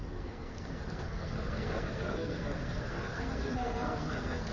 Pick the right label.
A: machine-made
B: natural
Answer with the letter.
A